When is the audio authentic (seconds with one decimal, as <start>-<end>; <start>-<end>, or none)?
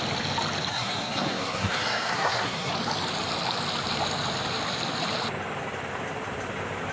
0.0-0.7; 2.7-6.9